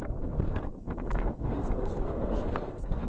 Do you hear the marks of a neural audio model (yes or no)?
yes